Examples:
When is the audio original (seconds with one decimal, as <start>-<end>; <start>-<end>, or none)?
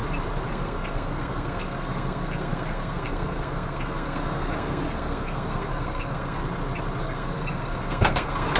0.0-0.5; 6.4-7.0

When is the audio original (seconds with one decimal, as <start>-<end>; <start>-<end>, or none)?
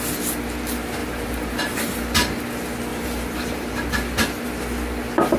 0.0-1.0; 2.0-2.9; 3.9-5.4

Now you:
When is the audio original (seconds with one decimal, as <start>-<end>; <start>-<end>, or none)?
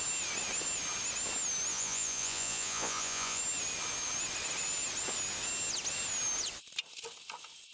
0.0-1.7; 3.4-7.7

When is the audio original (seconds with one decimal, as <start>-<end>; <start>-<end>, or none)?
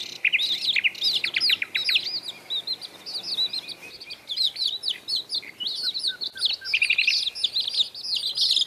0.0-8.7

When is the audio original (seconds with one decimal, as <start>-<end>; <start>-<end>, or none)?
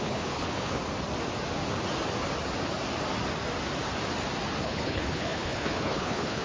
0.8-4.6